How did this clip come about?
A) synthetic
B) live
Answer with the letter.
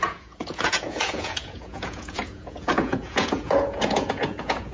A